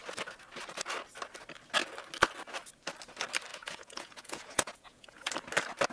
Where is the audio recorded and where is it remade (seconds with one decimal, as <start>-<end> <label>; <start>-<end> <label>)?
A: 0.0-3.5 recorded; 3.5-5.3 remade; 5.3-5.9 recorded